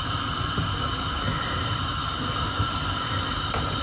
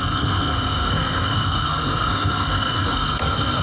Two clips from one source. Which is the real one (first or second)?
first